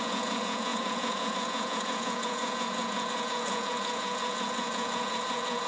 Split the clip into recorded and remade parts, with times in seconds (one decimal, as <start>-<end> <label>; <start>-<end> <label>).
0.0-5.7 remade